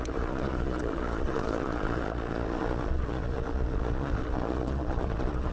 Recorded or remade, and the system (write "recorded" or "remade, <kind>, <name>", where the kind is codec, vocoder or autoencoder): remade, vocoder, Vocos